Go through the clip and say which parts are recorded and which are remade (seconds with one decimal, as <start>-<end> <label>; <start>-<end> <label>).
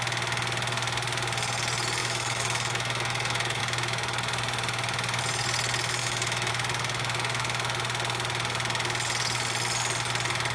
0.0-2.0 recorded; 2.0-3.6 remade; 3.6-6.0 recorded; 6.0-6.5 remade; 6.5-10.5 recorded